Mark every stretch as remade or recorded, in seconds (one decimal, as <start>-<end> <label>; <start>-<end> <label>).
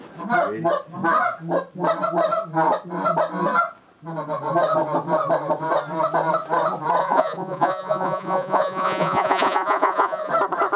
0.0-7.0 recorded; 7.0-10.3 remade; 10.3-10.8 recorded